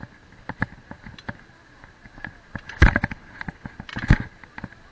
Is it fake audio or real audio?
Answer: real